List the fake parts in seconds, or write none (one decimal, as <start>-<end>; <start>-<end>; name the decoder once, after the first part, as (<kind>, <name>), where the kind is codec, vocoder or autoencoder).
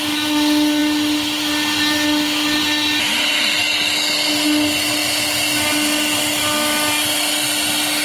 3.6-4.1 (codec, DAC)